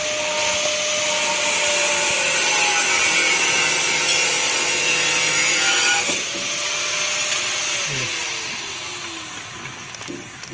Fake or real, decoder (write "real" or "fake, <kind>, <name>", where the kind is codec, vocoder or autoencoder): real